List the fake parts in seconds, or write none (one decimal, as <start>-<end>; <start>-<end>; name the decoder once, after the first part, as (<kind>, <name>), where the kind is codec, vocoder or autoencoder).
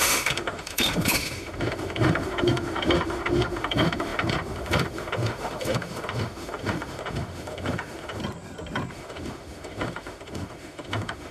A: 0.0-8.2 (autoencoder, DAC-VAE); 8.9-11.3